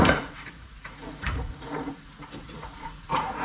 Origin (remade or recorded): remade